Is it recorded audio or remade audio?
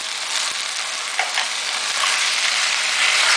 recorded